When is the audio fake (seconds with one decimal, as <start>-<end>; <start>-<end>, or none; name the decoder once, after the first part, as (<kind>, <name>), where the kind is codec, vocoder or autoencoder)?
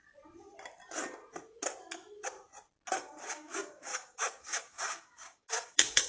2.9-6.1 (codec, DAC)